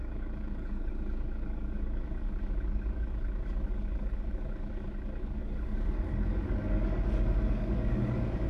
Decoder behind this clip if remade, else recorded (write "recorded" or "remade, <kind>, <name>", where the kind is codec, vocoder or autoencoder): remade, codec, DAC